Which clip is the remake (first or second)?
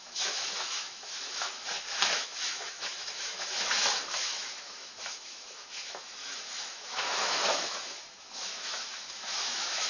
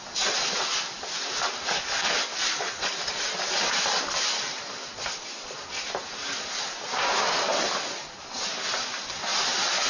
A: first